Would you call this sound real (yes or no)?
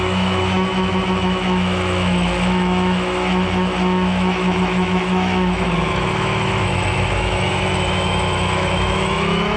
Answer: no